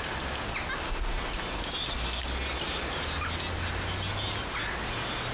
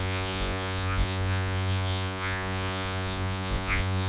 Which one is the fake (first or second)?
second